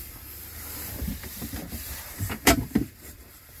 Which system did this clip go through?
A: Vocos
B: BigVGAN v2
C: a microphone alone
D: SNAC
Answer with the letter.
B